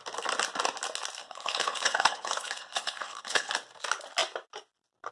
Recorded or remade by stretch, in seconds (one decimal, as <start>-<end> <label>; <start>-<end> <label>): 0.0-1.2 recorded; 1.2-3.5 remade; 3.5-5.1 recorded